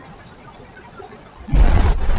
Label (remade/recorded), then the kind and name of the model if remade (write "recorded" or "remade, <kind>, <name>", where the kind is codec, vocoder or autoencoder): remade, vocoder, Vocos